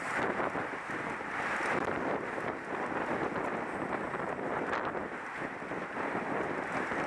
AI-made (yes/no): yes